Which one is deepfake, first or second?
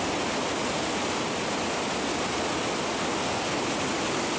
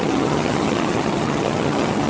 second